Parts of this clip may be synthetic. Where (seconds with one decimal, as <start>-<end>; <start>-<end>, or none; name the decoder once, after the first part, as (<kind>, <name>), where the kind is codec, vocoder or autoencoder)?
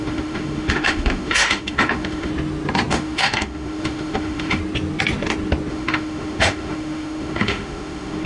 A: 0.0-2.3 (autoencoder, DAC-VAE); 2.9-4.6; 5.7-8.3